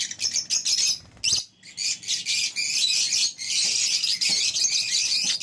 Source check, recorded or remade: recorded